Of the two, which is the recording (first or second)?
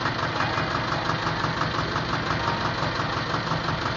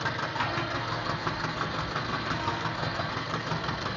first